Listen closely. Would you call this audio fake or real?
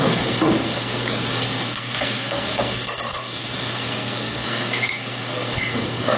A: fake